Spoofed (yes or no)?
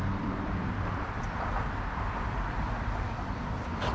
yes